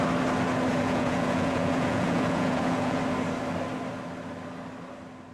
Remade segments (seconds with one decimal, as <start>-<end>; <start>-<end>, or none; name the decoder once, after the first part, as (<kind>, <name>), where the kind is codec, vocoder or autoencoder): 0.7-3.0 (vocoder, Vocos)